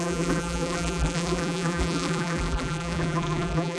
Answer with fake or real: fake